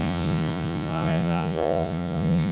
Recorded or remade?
remade